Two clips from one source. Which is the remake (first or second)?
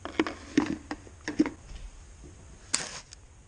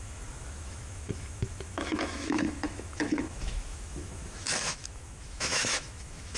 second